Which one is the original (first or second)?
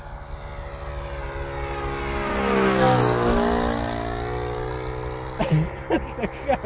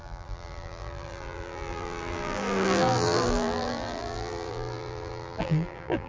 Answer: first